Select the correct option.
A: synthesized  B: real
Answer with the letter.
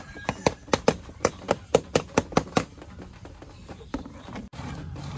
A